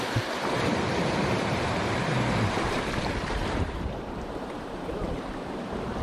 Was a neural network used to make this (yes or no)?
yes